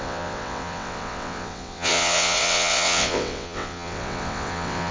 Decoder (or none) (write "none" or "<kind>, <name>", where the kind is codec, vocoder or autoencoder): vocoder, WaveNeXt